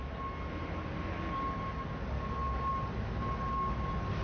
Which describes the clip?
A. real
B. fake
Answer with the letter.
A